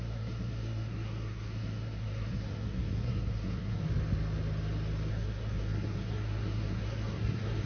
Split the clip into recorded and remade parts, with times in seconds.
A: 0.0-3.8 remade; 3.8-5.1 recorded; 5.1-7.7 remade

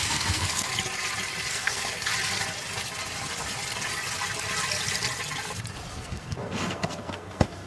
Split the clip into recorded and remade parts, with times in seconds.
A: 0.0-0.7 remade; 0.7-1.5 recorded; 1.5-2.1 remade; 2.1-5.9 recorded; 5.9-7.7 remade

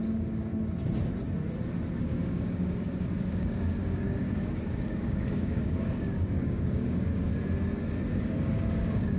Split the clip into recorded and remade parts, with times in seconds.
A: 0.0-0.5 remade; 0.5-2.0 recorded; 2.0-7.3 remade; 7.3-8.1 recorded; 8.1-9.2 remade

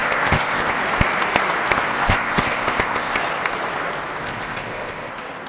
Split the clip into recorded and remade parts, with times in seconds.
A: 0.0-0.8 remade; 0.8-1.9 recorded; 1.9-3.2 remade; 3.2-4.2 recorded; 4.2-5.1 remade; 5.1-5.5 recorded

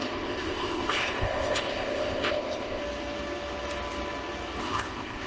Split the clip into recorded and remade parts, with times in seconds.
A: 0.0-2.8 remade; 2.8-4.6 recorded; 4.6-5.3 remade